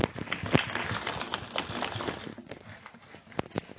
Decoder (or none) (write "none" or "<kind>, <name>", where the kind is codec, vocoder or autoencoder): none